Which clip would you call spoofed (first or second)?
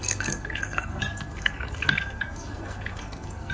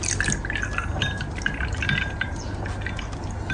first